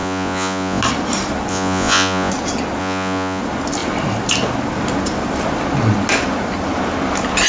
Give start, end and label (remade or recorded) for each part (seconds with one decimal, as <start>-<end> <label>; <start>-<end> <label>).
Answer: 0.0-0.8 remade; 0.8-1.5 recorded; 1.5-2.3 remade; 2.3-2.8 recorded; 2.8-3.4 remade; 3.4-7.5 recorded